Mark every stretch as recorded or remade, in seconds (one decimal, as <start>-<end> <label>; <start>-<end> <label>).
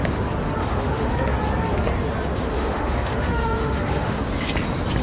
0.0-0.6 recorded; 0.6-1.1 remade; 1.1-2.3 recorded; 2.3-4.2 remade; 4.2-5.0 recorded